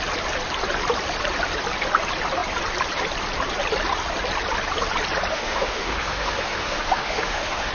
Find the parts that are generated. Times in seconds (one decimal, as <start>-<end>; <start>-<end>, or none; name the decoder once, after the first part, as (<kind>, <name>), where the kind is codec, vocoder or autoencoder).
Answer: 5.3-7.7 (autoencoder, DAC-VAE)